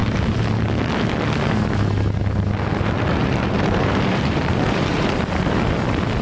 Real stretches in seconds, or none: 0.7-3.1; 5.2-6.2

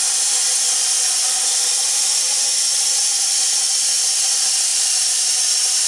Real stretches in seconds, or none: 0.0-1.2; 3.3-4.7; 5.4-5.9

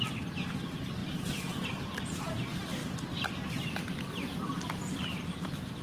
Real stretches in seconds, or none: 2.8-4.4

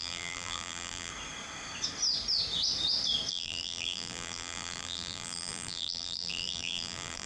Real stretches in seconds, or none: 1.1-3.3

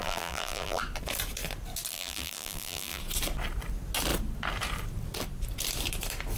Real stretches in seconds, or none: 0.8-1.9; 3.0-6.4

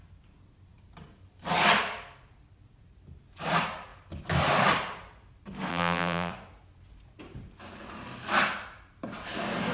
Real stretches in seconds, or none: 0.0-5.7; 6.3-9.7

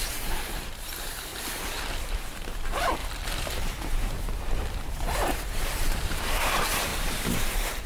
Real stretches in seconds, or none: 1.3-2.1; 3.0-4.8

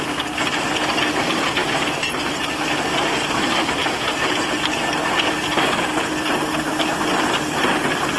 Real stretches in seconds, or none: 0.0-8.2